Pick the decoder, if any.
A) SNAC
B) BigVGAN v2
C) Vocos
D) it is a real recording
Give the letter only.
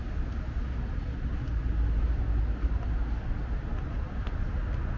D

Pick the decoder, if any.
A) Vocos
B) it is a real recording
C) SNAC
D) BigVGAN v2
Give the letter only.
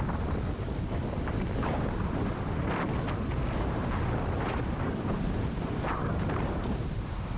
B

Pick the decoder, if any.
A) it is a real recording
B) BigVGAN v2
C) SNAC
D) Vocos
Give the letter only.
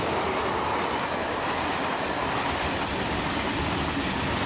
A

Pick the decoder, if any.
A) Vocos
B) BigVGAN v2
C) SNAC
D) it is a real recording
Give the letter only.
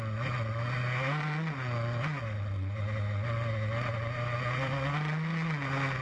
D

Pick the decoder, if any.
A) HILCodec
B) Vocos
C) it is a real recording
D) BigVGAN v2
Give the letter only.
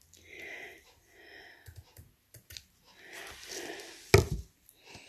C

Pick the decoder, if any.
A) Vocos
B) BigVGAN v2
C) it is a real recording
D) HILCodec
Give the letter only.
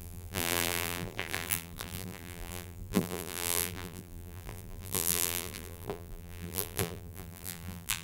B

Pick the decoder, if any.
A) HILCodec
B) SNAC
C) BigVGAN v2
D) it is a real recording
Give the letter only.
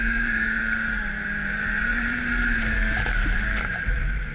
C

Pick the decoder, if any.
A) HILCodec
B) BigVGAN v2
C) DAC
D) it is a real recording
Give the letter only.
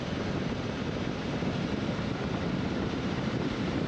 B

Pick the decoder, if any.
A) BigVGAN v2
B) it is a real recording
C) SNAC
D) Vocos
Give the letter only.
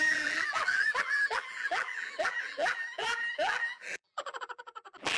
A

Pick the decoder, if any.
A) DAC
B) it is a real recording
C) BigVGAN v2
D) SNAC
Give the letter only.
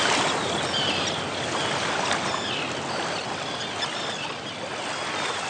B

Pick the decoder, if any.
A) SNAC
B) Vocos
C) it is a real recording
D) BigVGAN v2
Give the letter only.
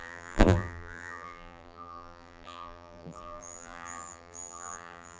D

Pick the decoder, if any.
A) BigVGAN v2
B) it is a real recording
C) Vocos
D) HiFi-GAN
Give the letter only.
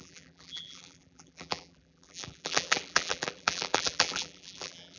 A